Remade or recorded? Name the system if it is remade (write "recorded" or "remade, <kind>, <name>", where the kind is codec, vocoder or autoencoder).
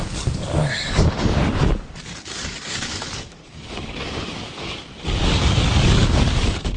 remade, codec, DAC